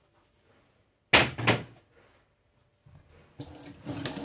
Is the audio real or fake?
real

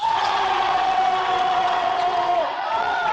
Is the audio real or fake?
fake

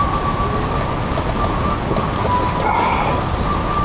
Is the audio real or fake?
real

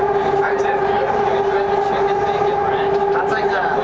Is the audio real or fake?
real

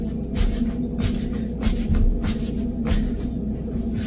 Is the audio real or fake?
real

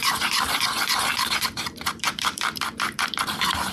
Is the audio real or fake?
fake